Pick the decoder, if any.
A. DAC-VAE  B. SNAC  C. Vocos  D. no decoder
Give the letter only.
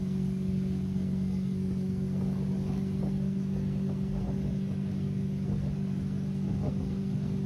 B